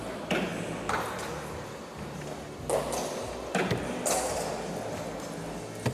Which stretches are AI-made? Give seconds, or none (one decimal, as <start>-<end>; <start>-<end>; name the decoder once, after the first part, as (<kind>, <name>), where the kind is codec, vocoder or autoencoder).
none